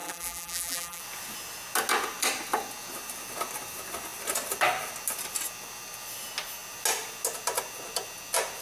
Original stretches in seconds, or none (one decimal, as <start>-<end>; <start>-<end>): 1.0-8.6